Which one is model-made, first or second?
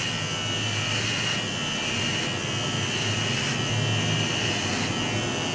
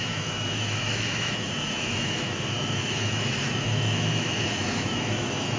second